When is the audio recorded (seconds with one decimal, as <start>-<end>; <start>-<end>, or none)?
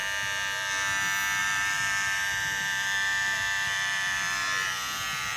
0.0-1.4